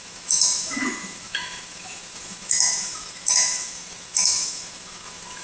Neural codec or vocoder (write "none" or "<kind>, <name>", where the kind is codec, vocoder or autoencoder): autoencoder, DAC-VAE